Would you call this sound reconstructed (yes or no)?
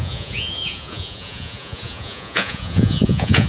yes